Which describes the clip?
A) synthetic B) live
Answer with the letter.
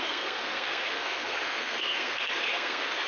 A